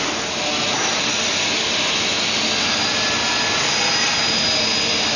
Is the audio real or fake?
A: real